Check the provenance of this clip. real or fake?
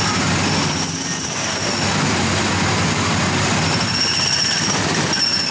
real